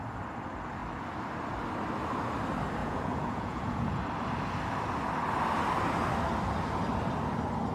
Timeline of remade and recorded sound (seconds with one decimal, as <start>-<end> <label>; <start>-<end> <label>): 0.0-2.8 recorded; 2.8-4.0 remade; 4.0-7.7 recorded